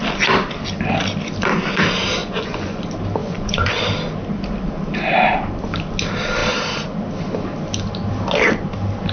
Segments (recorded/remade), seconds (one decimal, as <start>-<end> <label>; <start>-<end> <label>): 0.0-2.2 recorded; 2.2-2.8 remade; 2.8-3.2 recorded; 3.2-3.8 remade; 3.8-9.1 recorded